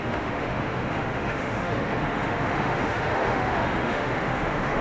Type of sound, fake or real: fake